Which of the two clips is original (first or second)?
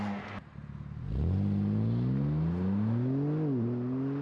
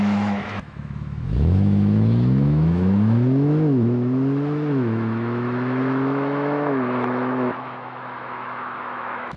first